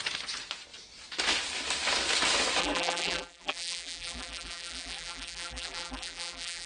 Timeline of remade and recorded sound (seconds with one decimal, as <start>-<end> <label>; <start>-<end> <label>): 0.0-2.6 recorded; 2.6-6.7 remade